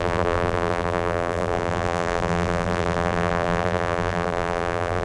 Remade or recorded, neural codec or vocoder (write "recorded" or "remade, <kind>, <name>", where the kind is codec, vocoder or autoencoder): remade, vocoder, BigVGAN v2